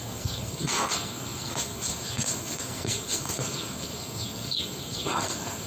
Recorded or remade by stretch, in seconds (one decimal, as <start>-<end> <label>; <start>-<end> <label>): 0.0-5.7 remade